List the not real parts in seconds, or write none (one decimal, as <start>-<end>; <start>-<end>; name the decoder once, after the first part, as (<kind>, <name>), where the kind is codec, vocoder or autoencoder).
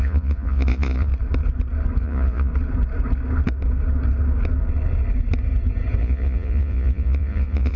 0.0-1.1 (vocoder, Vocos); 2.0-2.5; 6.0-7.8